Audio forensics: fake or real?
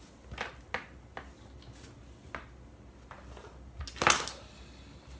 real